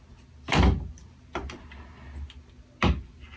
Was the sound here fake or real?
real